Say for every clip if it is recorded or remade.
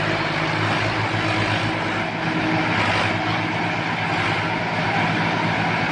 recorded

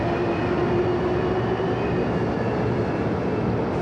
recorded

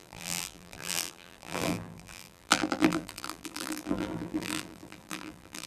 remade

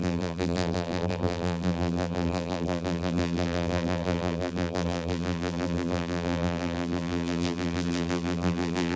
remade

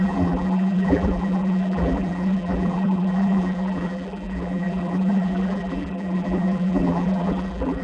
remade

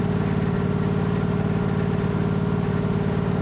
recorded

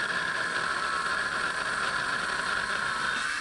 recorded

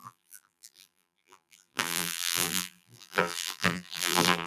remade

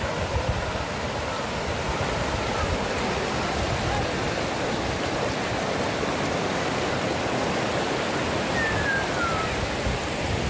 remade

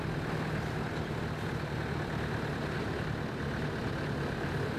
recorded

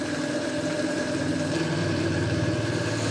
remade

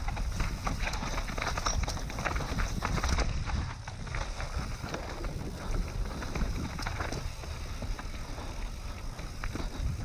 recorded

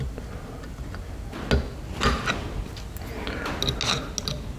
recorded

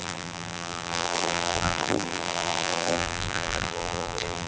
remade